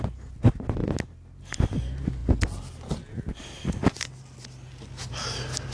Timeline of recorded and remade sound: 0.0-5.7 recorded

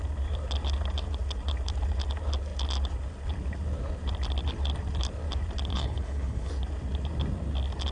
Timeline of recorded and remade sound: 0.0-5.7 recorded; 5.7-6.5 remade; 6.5-7.9 recorded

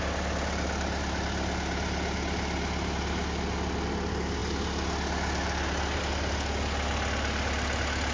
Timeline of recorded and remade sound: 0.0-8.1 recorded

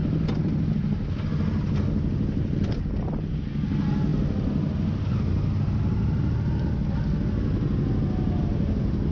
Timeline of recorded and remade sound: 0.0-9.1 recorded

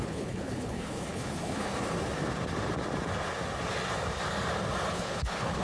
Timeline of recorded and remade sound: 0.0-1.7 remade; 1.7-4.9 recorded; 4.9-5.6 remade

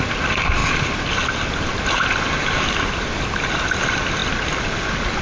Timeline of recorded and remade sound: 0.0-5.2 recorded

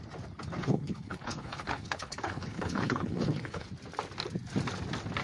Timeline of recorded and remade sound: 0.0-0.6 recorded; 0.6-3.7 remade; 3.7-5.2 recorded